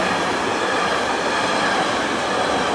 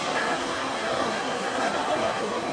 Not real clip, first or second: second